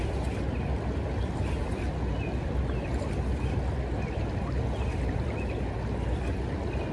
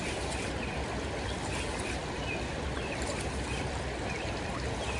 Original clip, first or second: first